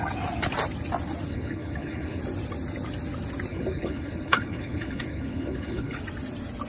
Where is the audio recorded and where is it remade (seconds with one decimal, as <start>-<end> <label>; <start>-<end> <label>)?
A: 0.0-1.3 recorded; 1.3-2.2 remade; 2.2-3.5 recorded; 3.5-6.0 remade; 6.0-6.7 recorded